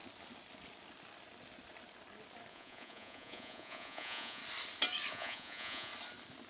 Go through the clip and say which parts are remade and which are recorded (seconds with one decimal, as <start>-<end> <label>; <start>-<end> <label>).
0.0-2.5 recorded; 2.5-4.4 remade; 4.4-5.1 recorded; 5.1-5.9 remade; 5.9-6.5 recorded